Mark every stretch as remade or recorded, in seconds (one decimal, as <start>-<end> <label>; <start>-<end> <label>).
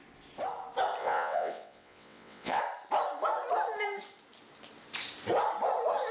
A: 0.0-1.0 recorded; 1.0-2.6 remade; 2.6-6.1 recorded